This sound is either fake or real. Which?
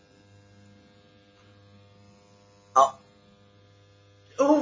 real